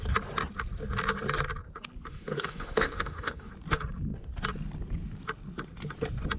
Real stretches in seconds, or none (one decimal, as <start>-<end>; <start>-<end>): 0.0-2.1; 3.5-6.4